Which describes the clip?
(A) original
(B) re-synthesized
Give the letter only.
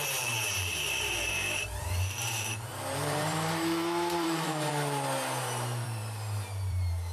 B